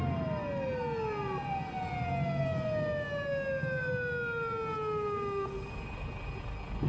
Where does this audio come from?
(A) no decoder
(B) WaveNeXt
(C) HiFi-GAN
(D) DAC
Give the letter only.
A